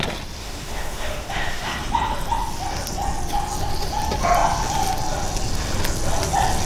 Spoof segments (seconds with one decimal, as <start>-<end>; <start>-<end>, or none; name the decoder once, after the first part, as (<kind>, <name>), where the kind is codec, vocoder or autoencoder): 0.4-1.7 (autoencoder, DAC-VAE)